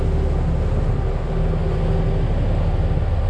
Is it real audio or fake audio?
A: real